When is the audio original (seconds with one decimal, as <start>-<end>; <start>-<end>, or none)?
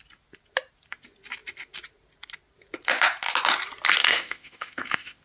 0.0-4.0